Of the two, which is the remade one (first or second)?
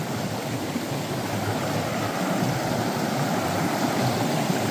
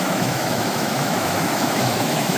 second